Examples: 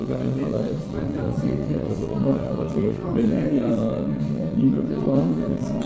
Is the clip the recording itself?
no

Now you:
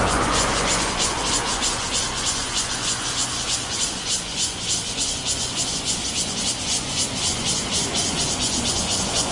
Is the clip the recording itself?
no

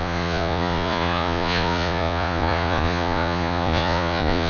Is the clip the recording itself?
no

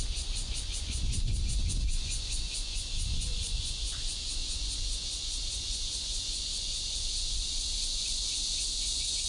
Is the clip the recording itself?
no